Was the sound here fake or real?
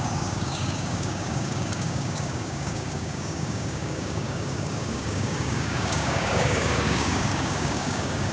fake